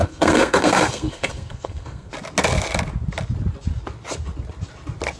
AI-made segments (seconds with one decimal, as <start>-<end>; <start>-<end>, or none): 0.0-2.1